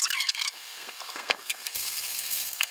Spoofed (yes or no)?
yes